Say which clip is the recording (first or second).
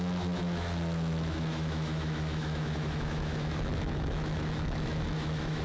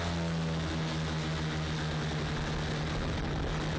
second